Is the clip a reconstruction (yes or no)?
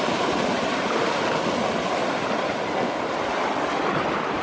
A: no